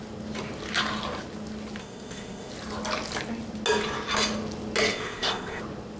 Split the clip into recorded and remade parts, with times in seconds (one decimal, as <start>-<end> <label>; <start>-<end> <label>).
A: 0.0-1.8 recorded; 1.8-2.5 remade; 2.5-4.9 recorded; 4.9-5.6 remade; 5.6-6.0 recorded